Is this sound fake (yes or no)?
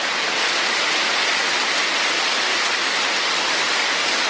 no